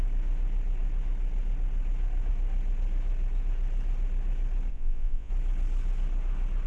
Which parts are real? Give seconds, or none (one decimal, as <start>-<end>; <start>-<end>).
0.0-4.7; 5.3-6.7